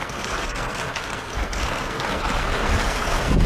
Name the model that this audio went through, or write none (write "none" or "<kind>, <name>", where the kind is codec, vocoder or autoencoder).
codec, SNAC